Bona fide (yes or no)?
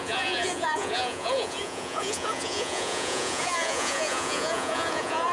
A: no